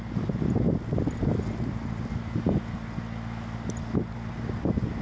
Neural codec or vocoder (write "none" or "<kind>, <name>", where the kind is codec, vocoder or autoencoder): none